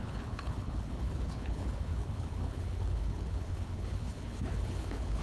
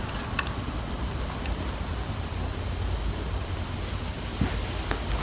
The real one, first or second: second